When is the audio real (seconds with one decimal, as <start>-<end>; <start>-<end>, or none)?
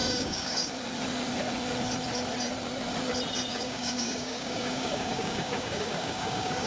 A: 0.7-3.5